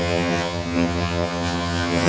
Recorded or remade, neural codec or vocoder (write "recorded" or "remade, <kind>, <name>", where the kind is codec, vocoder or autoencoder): remade, vocoder, HiFi-GAN